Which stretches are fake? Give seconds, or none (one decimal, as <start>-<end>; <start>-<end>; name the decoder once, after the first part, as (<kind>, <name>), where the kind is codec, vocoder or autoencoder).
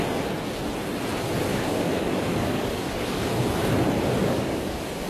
1.5-3.2 (codec, DAC); 4.2-5.1